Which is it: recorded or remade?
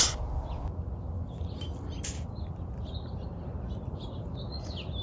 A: recorded